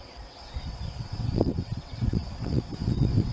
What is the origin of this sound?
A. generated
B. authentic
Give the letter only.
A